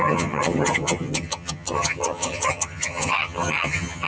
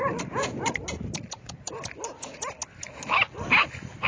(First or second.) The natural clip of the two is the second